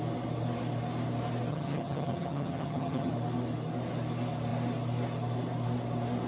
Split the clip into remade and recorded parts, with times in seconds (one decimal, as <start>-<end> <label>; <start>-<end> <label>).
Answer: 0.0-1.5 recorded; 1.5-3.1 remade; 3.1-6.3 recorded